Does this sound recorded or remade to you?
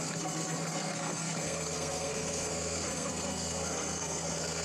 remade